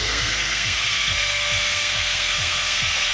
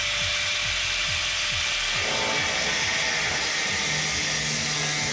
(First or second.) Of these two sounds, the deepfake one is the first